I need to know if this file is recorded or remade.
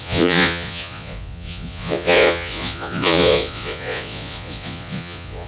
remade